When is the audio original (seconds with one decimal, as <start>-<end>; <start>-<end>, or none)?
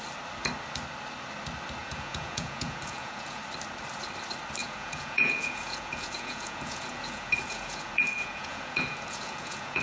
0.0-1.8; 3.4-4.6